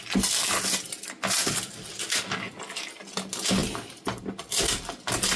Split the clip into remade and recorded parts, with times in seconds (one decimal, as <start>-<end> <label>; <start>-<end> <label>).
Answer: 0.0-5.4 recorded